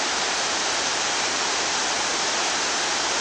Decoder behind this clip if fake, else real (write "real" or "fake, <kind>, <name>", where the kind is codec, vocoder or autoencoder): real